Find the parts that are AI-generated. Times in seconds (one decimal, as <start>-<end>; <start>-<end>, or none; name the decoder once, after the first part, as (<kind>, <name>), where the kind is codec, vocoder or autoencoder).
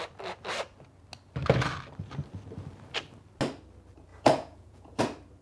4.1-5.0 (vocoder, Vocos)